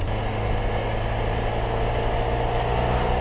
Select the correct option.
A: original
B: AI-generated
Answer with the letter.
A